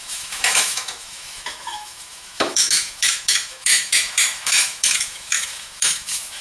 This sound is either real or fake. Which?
fake